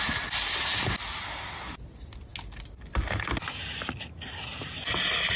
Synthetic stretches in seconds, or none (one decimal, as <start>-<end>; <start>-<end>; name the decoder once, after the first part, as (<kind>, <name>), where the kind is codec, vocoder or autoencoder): none